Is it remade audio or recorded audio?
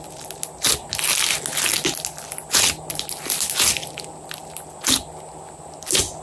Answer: recorded